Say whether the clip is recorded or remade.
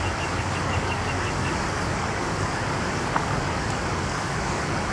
remade